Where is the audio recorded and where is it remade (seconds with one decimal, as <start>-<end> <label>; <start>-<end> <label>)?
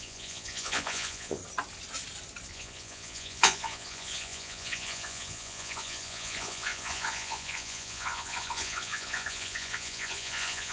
0.0-1.4 remade; 1.4-2.5 recorded; 2.5-10.7 remade